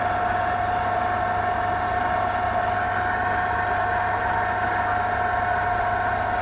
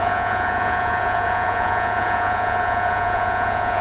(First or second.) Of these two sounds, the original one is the first